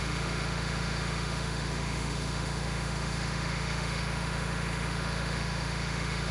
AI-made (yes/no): yes